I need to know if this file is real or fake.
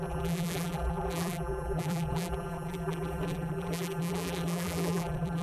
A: fake